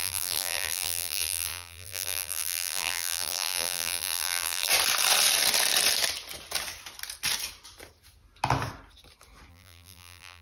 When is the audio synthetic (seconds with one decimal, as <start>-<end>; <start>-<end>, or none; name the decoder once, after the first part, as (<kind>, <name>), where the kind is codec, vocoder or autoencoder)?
0.0-4.7 (vocoder, BigVGAN v2); 9.5-10.4